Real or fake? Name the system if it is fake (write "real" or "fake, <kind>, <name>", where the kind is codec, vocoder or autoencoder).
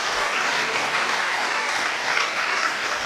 fake, codec, DAC